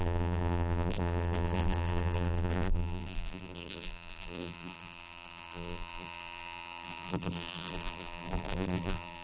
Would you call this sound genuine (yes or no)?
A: no